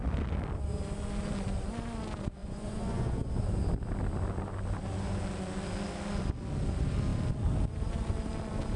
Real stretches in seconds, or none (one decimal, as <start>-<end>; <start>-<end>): 0.0-2.4; 3.3-8.8